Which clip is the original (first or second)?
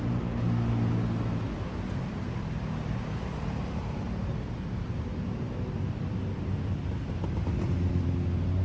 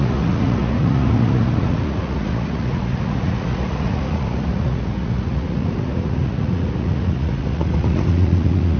first